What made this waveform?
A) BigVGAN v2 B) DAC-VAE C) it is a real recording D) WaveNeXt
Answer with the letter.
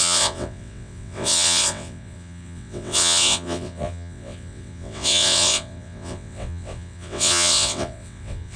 D